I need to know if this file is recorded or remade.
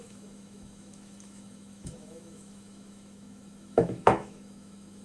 remade